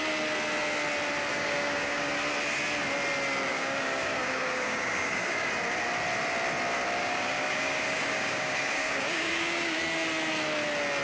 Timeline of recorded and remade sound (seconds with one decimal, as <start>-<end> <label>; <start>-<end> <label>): 0.0-1.3 recorded; 1.3-2.1 remade; 2.1-3.5 recorded; 3.5-5.5 remade; 5.5-7.0 recorded; 7.0-9.8 remade; 9.8-11.0 recorded